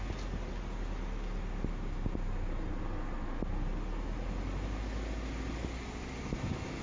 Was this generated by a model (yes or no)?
no